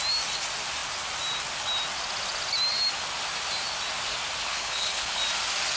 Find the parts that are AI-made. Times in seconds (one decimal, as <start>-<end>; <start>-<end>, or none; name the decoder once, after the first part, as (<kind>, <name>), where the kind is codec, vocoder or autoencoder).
4.4-5.2 (codec, HILCodec)